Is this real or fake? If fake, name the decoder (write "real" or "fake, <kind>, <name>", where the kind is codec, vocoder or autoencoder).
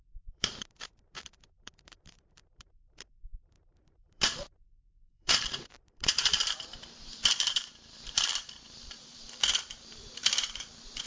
fake, vocoder, BigVGAN v2